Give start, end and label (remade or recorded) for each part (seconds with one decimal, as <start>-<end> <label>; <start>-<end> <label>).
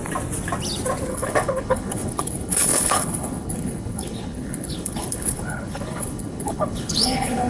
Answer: 0.0-1.1 recorded; 1.1-7.5 remade